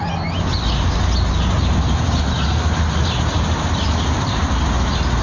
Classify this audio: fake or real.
real